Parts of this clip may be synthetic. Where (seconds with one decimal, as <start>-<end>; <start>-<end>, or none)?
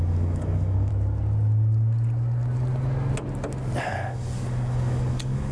0.0-0.9; 3.8-5.5